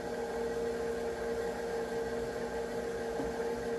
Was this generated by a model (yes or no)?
no